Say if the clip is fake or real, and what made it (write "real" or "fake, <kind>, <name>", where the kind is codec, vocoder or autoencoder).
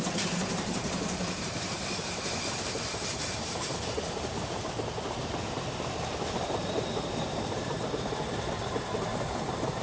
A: fake, vocoder, BigVGAN v2